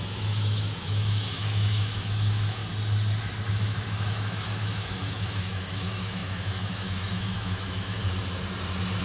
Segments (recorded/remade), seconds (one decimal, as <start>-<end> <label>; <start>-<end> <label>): 0.0-2.6 remade; 2.6-3.5 recorded; 3.5-8.0 remade; 8.0-9.0 recorded